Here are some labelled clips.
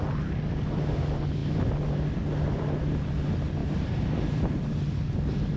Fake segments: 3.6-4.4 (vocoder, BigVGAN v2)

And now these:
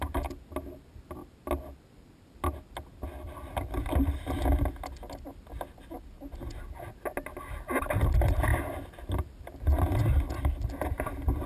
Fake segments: none

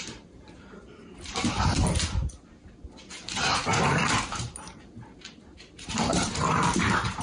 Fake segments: 0.0-1.8 (vocoder, BigVGAN v2); 3.9-7.2